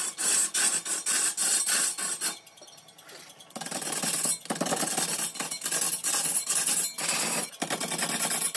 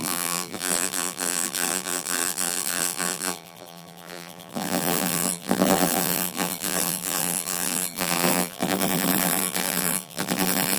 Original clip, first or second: first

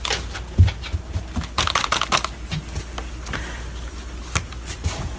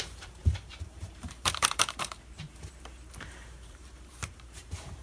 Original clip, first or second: first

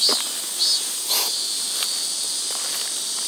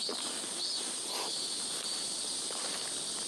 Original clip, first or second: first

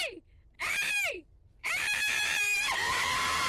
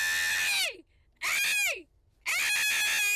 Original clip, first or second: second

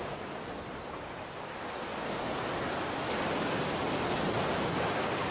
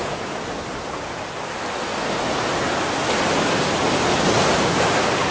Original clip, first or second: second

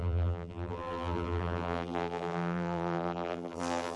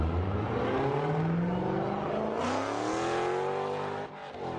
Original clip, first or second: second